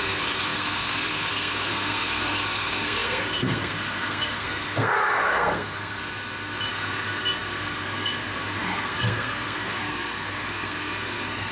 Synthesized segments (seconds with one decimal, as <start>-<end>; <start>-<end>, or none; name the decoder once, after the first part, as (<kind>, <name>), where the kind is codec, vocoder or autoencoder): 0.0-6.0 (codec, SNAC); 6.7-11.5